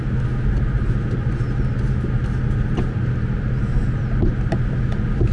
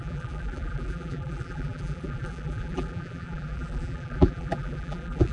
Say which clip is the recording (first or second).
first